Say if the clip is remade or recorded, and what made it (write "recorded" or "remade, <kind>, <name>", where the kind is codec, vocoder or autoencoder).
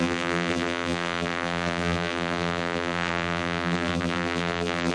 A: remade, vocoder, BigVGAN v2